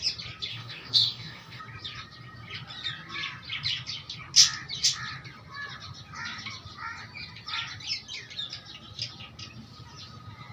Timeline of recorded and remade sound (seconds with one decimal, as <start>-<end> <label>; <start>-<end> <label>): 0.0-0.5 recorded; 0.5-1.6 remade; 1.6-10.5 recorded